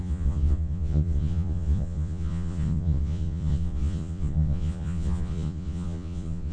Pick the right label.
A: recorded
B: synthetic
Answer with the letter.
B